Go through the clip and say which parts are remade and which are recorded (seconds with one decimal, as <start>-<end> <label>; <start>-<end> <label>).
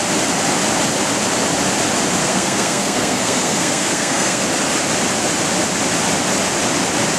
0.0-2.2 recorded; 2.2-4.4 remade; 4.4-7.2 recorded